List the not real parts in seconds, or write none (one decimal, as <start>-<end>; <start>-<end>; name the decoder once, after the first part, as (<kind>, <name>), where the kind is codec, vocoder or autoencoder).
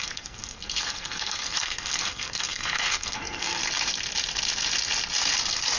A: 0.0-3.6 (codec, SNAC)